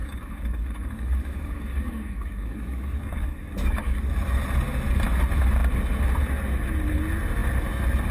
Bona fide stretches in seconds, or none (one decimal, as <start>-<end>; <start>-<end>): 4.1-8.1